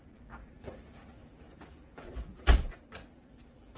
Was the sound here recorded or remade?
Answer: remade